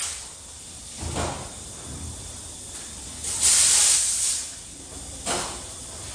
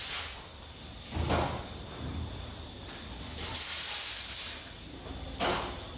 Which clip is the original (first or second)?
second